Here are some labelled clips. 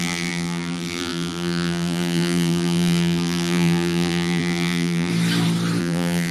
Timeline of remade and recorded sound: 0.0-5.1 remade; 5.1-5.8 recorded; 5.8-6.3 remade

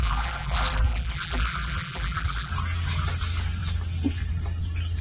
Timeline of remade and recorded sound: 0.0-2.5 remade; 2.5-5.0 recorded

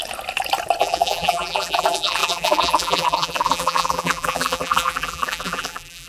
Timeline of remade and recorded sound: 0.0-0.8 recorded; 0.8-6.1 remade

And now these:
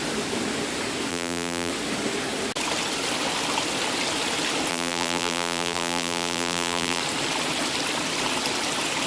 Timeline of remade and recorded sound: 0.0-1.1 recorded; 1.1-1.7 remade; 1.7-4.7 recorded; 4.7-7.0 remade; 7.0-9.1 recorded

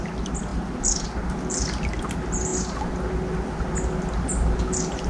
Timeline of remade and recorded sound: 0.0-5.1 recorded

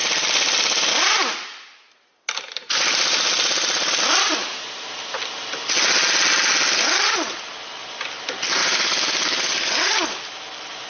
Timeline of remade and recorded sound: 0.0-4.6 remade; 4.6-8.6 recorded; 8.6-9.9 remade; 9.9-10.9 recorded